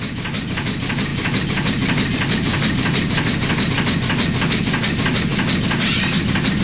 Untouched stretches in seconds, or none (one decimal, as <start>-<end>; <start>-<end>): 0.0-1.1; 3.7-5.3